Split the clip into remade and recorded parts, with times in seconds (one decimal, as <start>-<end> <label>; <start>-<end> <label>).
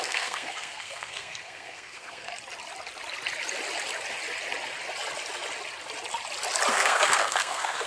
0.0-2.3 remade; 2.3-6.7 recorded; 6.7-7.9 remade